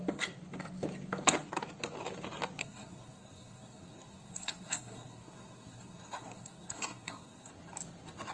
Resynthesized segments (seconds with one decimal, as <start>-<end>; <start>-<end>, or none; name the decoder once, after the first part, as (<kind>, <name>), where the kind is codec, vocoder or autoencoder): 2.6-7.5 (codec, SNAC)